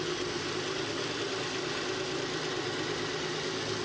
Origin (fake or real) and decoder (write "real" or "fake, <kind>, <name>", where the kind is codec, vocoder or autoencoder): real